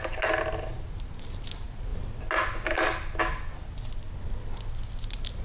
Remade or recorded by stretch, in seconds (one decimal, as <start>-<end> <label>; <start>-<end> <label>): 0.0-5.4 recorded